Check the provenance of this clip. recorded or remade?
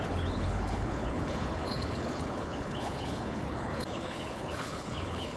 remade